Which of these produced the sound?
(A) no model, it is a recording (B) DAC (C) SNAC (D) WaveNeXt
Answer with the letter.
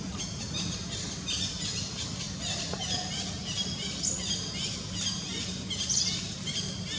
A